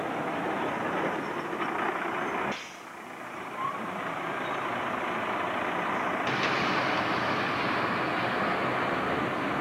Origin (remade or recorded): recorded